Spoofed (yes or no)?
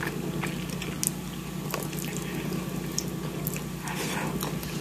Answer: no